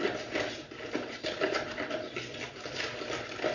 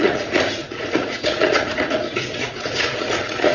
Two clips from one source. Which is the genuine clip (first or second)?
first